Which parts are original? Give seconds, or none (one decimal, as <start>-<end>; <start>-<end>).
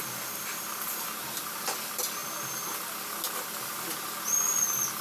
0.0-5.0